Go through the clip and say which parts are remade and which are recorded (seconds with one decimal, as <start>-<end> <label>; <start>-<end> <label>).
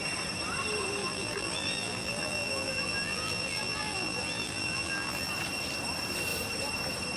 0.0-1.0 recorded; 1.0-5.3 remade; 5.3-7.2 recorded